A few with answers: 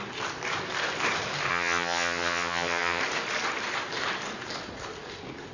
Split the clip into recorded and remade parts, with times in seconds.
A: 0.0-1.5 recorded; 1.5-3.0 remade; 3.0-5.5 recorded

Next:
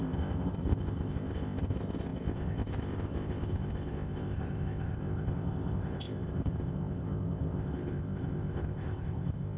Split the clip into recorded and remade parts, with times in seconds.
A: 0.0-9.6 remade

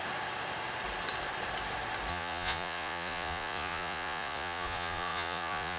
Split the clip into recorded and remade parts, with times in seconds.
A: 0.0-2.1 recorded; 2.1-5.8 remade

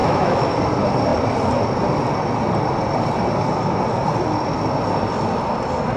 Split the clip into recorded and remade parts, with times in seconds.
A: 0.0-0.6 remade; 0.6-6.0 recorded

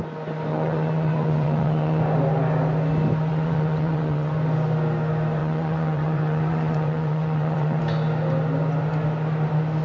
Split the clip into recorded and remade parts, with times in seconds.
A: 0.0-0.5 recorded; 0.5-2.0 remade; 2.0-3.3 recorded; 3.3-4.3 remade; 4.3-5.4 recorded; 5.4-7.8 remade; 7.8-9.8 recorded